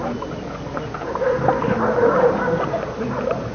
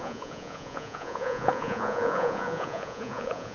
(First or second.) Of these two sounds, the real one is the first